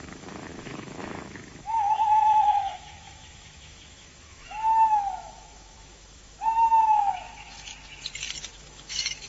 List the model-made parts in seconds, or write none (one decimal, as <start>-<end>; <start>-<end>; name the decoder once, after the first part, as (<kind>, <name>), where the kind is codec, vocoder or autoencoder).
0.0-7.7 (autoencoder, DAC-VAE); 8.5-9.3